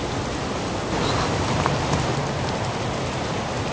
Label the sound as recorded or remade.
recorded